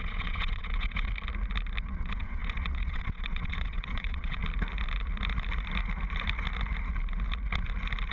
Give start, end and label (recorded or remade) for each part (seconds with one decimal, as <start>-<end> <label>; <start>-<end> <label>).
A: 0.0-1.1 remade; 1.1-1.8 recorded; 1.8-4.4 remade; 4.4-8.1 recorded